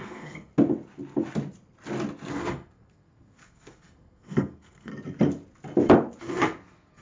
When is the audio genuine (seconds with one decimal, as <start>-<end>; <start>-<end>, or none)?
0.5-2.3; 4.9-6.2